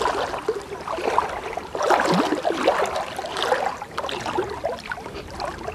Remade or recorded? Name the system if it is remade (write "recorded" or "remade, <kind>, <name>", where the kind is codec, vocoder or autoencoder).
recorded